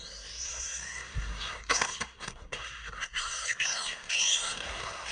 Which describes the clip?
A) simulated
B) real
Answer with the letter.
A